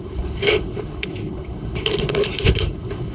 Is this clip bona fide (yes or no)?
no